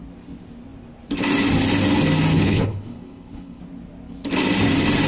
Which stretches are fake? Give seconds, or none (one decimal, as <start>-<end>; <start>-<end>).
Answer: 2.3-3.6